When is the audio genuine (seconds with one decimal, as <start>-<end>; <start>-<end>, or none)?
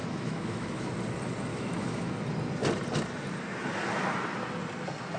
0.9-1.5; 2.1-5.2